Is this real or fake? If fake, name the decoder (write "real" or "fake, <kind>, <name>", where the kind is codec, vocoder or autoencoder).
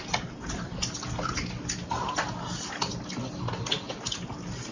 real